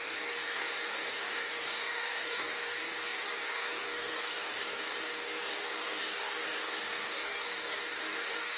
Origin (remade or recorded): remade